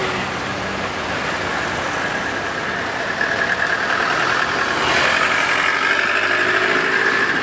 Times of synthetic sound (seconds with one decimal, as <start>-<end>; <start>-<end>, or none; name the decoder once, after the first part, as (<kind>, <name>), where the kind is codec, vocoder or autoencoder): none